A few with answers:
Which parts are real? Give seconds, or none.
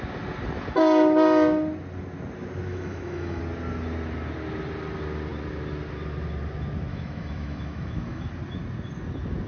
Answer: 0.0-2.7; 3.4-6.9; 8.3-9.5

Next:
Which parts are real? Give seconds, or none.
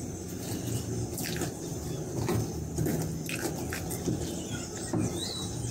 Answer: 0.0-5.7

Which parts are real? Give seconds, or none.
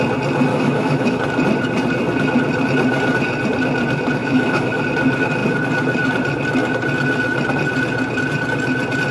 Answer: 0.0-0.5; 1.2-4.2; 4.8-9.1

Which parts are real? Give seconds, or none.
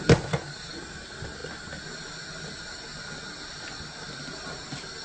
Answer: 0.0-5.0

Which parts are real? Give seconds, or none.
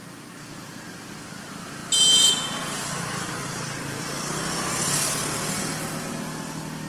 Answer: 0.0-6.9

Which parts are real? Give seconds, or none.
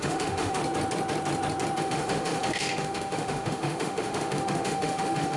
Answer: 0.6-1.8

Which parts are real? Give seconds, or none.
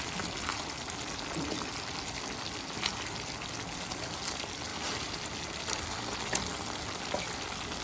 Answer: 0.0-7.8